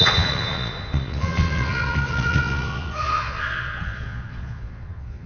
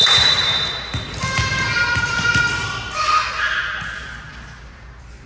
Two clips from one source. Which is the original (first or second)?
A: second